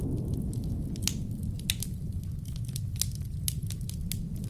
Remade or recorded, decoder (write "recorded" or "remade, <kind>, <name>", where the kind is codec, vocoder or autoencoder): recorded